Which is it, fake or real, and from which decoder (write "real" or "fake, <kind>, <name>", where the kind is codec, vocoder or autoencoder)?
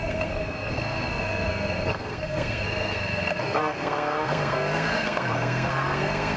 fake, codec, SNAC